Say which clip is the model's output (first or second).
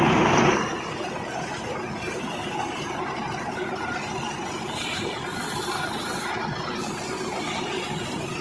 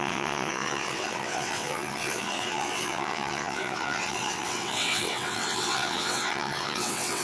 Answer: second